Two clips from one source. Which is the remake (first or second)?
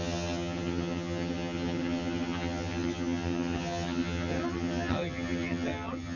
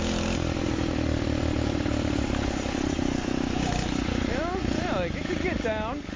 first